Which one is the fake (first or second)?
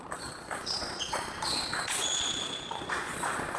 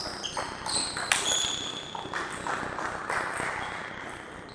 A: first